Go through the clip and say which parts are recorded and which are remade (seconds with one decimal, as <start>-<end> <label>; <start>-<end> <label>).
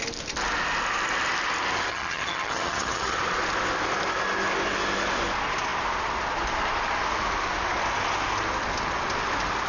0.0-1.9 recorded; 1.9-3.2 remade; 3.2-9.7 recorded